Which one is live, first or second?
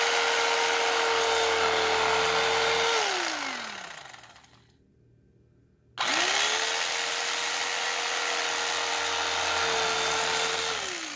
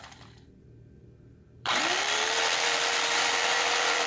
first